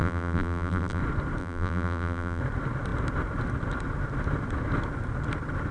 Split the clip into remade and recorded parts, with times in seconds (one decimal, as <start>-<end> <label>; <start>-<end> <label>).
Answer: 0.0-1.0 remade; 1.0-1.4 recorded; 1.4-2.4 remade; 2.4-5.7 recorded